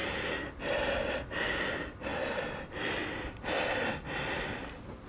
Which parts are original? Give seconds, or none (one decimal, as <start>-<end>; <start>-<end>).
0.0-5.1